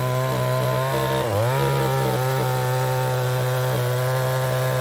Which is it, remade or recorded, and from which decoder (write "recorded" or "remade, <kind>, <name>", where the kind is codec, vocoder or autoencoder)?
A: recorded